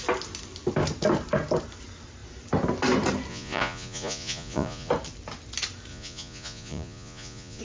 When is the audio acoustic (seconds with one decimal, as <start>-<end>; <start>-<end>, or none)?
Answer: 0.0-3.3; 4.9-5.9